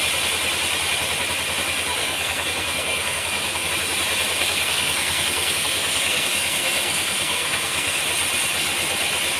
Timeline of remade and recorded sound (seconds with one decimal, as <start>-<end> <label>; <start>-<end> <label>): 0.0-2.0 recorded; 2.0-3.7 remade; 3.7-4.3 recorded; 4.3-8.0 remade; 8.0-9.4 recorded